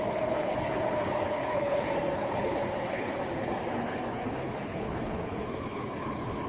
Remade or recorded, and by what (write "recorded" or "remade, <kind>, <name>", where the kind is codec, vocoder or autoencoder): remade, codec, HILCodec